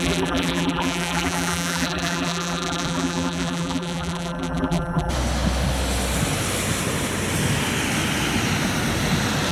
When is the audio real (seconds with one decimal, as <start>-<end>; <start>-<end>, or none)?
5.1-9.5